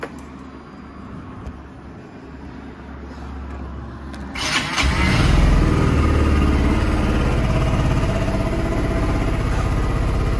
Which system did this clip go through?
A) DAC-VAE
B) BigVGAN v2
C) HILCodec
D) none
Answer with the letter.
D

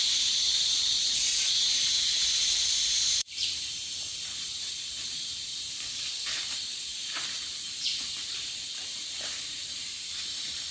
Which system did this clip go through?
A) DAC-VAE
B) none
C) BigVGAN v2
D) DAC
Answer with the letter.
C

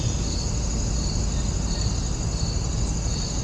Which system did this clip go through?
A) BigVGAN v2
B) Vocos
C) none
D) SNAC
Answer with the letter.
C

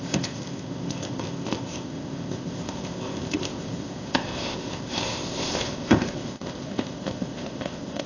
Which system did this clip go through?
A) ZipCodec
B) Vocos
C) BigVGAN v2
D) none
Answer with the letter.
A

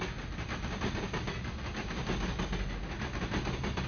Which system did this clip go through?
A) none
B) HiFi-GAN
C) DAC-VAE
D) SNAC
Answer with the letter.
A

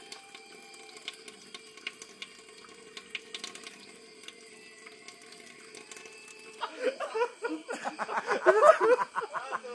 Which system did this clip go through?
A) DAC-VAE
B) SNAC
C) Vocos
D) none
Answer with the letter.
D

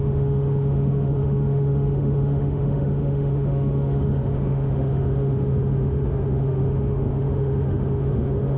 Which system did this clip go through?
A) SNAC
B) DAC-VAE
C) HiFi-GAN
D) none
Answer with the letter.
B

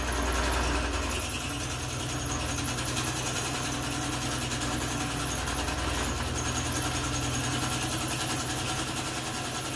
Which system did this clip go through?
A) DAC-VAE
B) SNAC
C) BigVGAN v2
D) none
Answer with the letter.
D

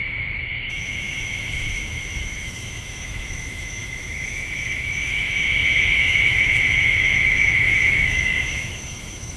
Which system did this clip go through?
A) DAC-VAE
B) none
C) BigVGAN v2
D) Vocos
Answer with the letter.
A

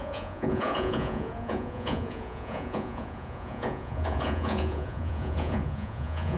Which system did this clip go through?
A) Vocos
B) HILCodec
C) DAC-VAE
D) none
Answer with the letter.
A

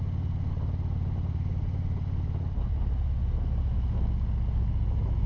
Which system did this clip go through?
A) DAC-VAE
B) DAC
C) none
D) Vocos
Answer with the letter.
C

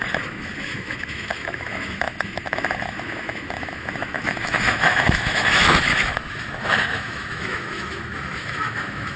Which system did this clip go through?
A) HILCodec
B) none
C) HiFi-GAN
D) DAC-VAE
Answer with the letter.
D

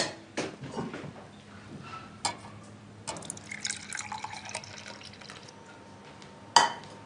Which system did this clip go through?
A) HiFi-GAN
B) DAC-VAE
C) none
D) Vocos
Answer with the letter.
C